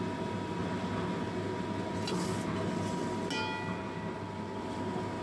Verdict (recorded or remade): recorded